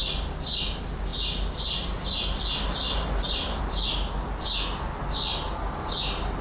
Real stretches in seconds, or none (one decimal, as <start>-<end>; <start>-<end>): 0.0-1.1; 3.6-6.4